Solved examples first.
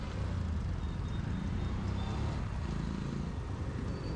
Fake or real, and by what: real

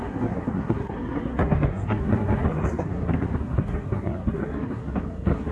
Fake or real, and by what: fake, codec, SNAC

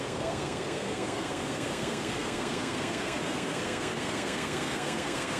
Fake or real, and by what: fake, codec, SNAC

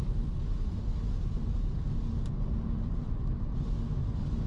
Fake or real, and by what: real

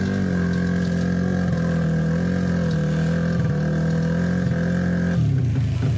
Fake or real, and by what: real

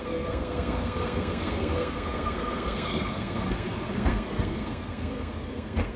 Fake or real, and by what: fake, codec, SNAC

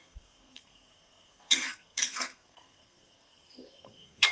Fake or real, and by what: fake, codec, SNAC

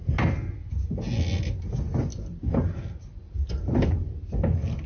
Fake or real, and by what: real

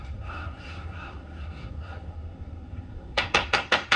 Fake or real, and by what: fake, codec, SNAC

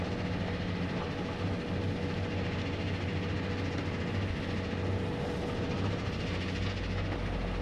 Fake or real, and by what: real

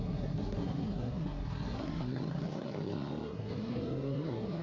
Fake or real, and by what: fake, codec, SNAC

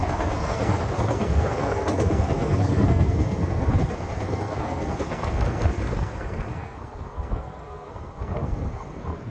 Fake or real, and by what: fake, codec, SNAC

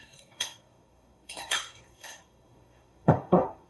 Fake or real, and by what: fake, codec, SNAC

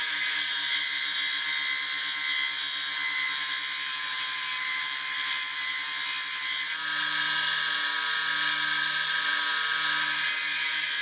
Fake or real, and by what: real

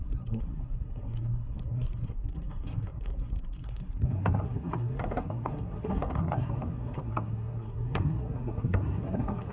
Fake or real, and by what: fake, codec, SNAC